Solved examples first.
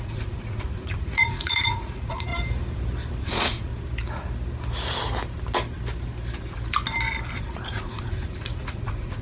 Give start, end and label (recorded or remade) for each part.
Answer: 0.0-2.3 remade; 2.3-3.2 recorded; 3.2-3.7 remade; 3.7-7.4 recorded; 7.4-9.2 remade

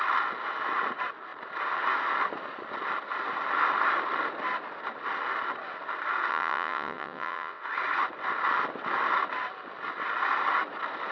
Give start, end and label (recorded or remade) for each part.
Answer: 0.0-6.3 recorded; 6.3-7.6 remade; 7.6-11.1 recorded

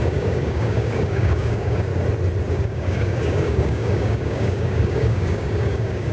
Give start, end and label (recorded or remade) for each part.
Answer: 0.0-1.9 remade; 1.9-2.5 recorded; 2.5-6.1 remade

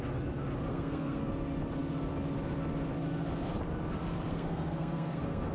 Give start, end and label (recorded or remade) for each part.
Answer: 0.0-0.7 recorded; 0.7-1.3 remade; 1.3-4.3 recorded; 4.3-5.5 remade

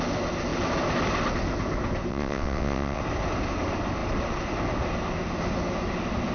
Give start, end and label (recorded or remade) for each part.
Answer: 0.0-2.1 recorded; 2.1-3.0 remade; 3.0-6.3 recorded

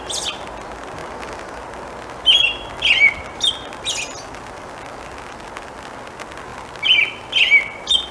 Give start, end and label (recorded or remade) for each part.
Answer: 0.0-8.1 recorded

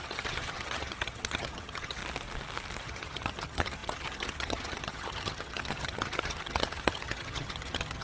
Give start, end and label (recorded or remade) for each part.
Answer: 0.0-2.0 remade; 2.0-2.8 recorded; 2.8-8.0 remade

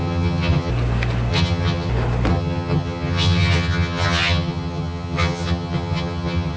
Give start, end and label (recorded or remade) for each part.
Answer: 0.0-0.7 remade; 0.7-1.3 recorded; 1.3-1.9 remade; 1.9-2.3 recorded; 2.3-6.6 remade